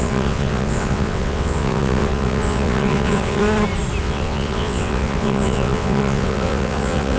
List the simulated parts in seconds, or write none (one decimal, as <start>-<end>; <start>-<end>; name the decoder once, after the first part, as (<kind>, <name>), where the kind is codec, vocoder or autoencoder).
0.0-3.4 (vocoder, WaveNeXt); 4.0-7.2